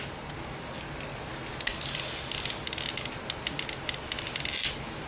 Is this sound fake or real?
real